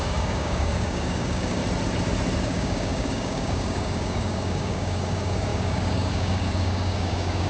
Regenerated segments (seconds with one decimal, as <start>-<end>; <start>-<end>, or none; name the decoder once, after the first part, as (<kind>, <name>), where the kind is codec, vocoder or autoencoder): 0.0-1.6 (codec, DAC); 2.4-7.5